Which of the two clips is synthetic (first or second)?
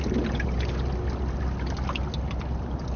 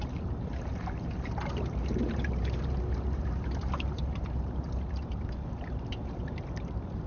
second